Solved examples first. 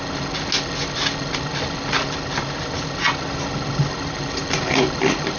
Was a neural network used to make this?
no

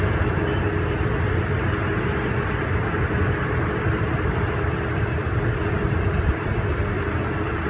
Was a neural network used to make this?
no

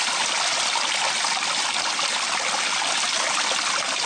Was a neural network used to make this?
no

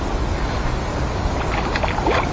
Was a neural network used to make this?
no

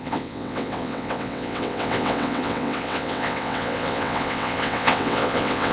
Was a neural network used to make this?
yes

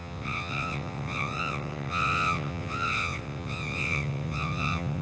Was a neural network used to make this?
yes